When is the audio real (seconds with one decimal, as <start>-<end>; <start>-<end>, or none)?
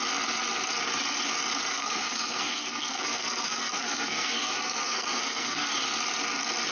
0.0-1.7; 5.7-6.7